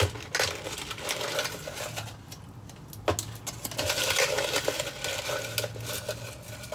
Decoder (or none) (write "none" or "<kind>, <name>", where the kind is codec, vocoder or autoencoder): none